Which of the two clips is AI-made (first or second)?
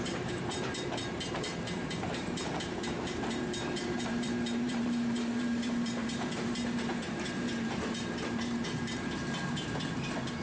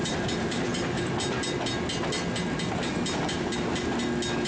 first